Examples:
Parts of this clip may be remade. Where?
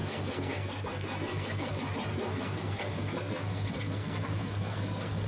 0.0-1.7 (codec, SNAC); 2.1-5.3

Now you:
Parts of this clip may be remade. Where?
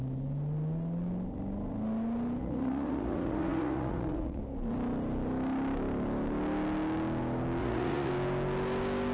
2.4-4.4 (vocoder, Vocos); 7.6-8.1